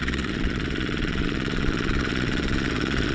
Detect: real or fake fake